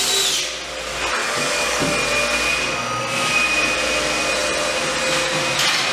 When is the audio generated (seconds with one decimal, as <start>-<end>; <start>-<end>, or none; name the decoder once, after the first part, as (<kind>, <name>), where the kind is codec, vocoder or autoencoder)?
1.2-1.8 (codec, DAC)